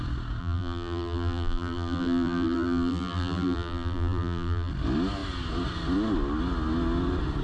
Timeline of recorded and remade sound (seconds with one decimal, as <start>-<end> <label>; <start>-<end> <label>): 0.0-0.4 recorded; 0.4-4.7 remade; 4.7-7.4 recorded